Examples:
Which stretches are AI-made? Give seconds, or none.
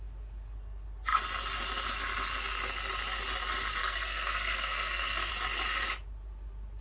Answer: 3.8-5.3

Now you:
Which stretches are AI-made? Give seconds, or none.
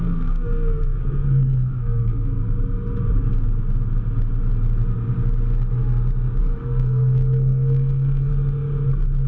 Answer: 0.0-2.3; 6.4-8.3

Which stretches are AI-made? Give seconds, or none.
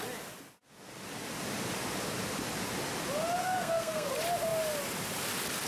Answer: 3.4-4.1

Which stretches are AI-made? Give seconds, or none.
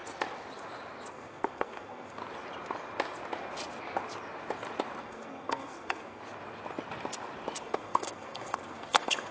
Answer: 1.1-2.2; 5.0-6.2; 7.6-9.3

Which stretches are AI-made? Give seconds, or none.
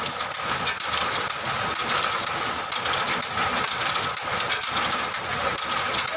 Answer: none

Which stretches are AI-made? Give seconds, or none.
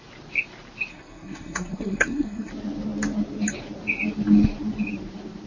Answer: 0.9-2.5